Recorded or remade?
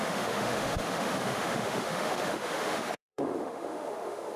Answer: remade